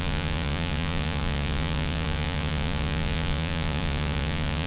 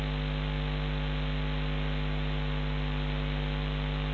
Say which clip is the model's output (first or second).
first